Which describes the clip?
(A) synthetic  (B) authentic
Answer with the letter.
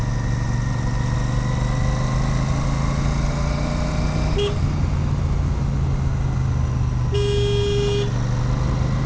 B